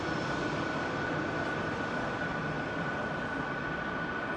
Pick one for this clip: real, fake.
real